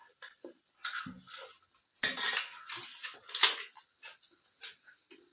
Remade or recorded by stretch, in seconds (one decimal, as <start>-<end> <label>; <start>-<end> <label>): 0.0-5.3 recorded